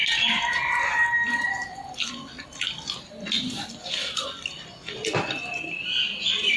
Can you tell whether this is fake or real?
real